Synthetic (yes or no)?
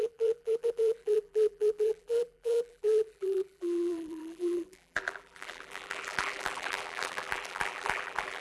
yes